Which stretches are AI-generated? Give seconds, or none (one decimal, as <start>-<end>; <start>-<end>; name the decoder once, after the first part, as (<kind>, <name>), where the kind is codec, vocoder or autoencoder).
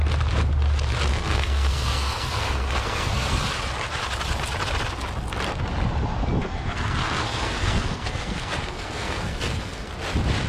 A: 1.1-3.4 (codec, SNAC); 6.4-9.9